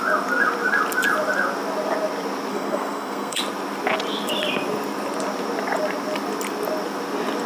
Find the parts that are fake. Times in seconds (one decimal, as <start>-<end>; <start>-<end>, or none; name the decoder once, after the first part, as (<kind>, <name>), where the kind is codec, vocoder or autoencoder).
2.5-3.4 (codec, SNAC)